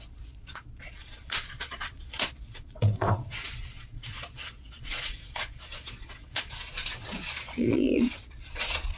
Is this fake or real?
fake